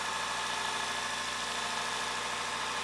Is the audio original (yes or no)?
yes